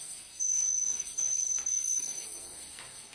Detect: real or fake fake